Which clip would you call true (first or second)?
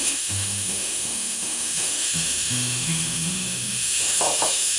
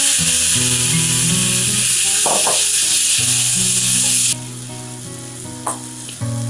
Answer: second